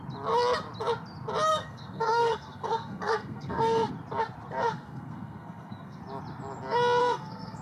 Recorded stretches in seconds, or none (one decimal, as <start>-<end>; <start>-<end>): 0.0-1.5; 3.9-4.6; 6.0-7.0